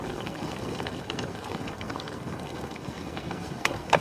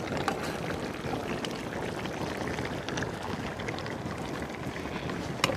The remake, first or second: first